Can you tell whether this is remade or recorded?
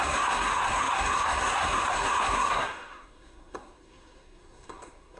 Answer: remade